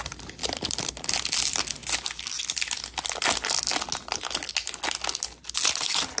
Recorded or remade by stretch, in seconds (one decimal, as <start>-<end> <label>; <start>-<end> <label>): 0.0-0.4 recorded; 0.4-0.9 remade; 0.9-6.2 recorded